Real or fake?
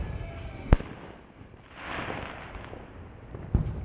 real